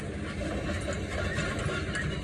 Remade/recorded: recorded